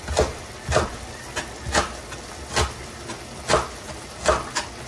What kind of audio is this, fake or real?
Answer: real